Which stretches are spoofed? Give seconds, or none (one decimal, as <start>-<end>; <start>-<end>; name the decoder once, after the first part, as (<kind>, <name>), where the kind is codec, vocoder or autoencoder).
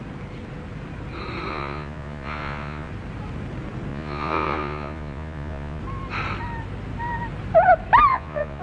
1.5-2.9 (vocoder, Vocos); 3.9-5.8; 8.1-8.6